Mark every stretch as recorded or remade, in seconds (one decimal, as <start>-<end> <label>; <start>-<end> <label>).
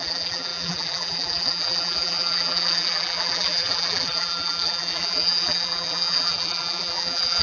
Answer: 0.0-7.4 remade